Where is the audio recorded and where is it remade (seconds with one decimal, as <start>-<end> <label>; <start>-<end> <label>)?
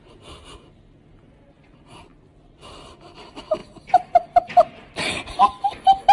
0.0-3.6 recorded; 3.6-4.9 remade; 4.9-6.1 recorded